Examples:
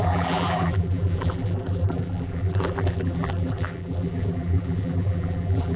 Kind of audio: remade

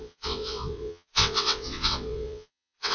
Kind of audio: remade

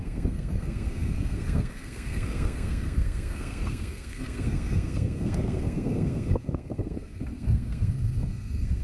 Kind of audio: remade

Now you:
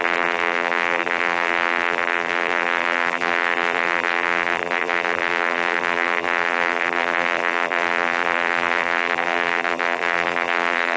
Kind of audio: remade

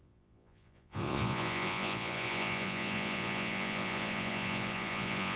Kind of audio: remade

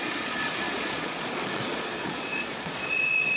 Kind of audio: remade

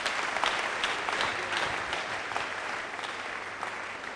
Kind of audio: recorded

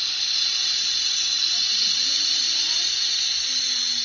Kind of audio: recorded